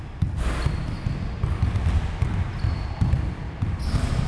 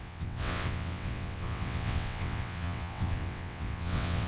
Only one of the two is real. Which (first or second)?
first